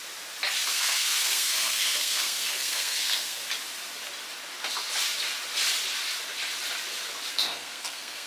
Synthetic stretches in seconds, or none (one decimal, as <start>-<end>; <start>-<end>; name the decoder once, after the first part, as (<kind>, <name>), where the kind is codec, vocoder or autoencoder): 0.7-3.4 (codec, SNAC); 7.3-8.3